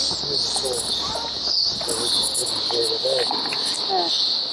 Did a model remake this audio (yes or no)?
no